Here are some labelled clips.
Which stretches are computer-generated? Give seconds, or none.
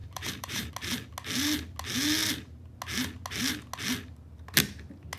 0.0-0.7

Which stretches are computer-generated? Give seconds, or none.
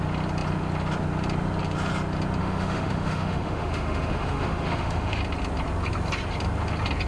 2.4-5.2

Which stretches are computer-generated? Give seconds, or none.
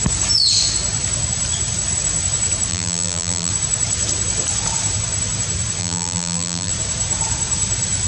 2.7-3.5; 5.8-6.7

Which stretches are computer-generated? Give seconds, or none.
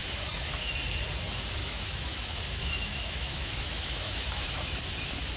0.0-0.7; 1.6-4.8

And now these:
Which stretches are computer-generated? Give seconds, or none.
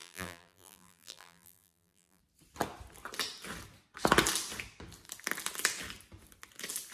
0.0-2.2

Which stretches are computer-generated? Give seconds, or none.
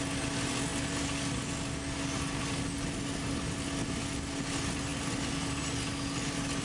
none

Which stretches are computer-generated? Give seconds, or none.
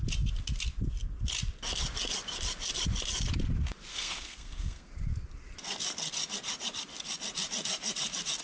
3.9-4.9